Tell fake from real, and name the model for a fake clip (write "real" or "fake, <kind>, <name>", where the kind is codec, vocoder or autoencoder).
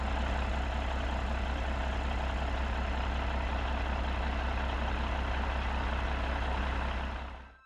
real